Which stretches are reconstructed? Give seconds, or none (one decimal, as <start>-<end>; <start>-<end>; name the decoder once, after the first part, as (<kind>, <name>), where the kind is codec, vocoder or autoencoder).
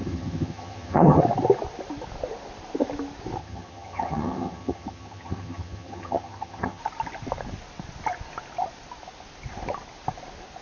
0.0-1.2 (vocoder, HiFi-GAN); 3.4-6.8